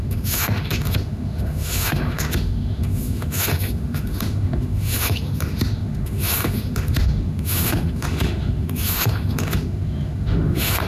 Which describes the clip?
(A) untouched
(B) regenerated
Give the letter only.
B